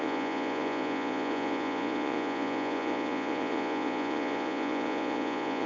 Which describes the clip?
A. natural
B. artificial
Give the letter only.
B